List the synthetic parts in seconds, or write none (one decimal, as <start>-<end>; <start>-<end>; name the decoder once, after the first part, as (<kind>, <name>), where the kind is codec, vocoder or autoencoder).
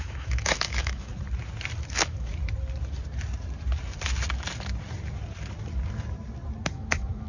0.0-1.1 (autoencoder, DAC-VAE); 1.8-2.3; 6.7-7.3